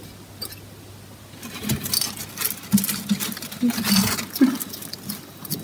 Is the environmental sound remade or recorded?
recorded